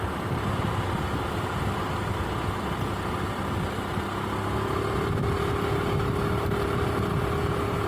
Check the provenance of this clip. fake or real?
real